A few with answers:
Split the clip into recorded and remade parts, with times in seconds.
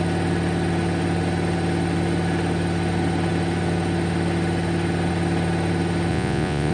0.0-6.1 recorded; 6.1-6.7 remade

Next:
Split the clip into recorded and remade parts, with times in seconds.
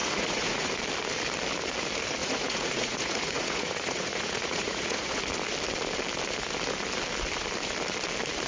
0.0-0.7 remade; 0.7-2.2 recorded; 2.2-5.2 remade; 5.2-8.5 recorded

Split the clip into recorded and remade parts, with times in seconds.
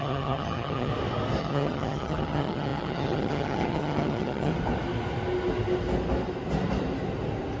0.0-0.9 remade; 0.9-1.4 recorded; 1.4-4.5 remade; 4.5-7.6 recorded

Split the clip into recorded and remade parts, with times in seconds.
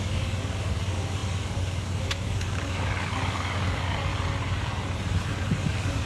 0.0-4.1 remade; 4.1-5.2 recorded; 5.2-6.1 remade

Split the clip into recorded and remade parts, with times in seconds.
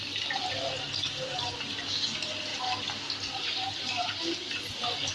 0.0-5.1 recorded